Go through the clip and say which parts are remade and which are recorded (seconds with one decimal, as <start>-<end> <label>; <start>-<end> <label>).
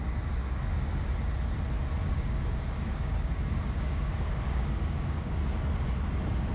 0.0-0.4 recorded; 0.4-1.1 remade; 1.1-2.0 recorded; 2.0-5.4 remade; 5.4-6.5 recorded